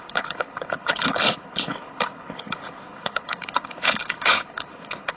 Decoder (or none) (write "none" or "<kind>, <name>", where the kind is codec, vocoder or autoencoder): codec, HILCodec